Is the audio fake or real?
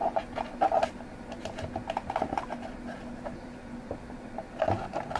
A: real